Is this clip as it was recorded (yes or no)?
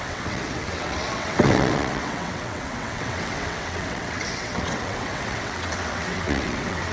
no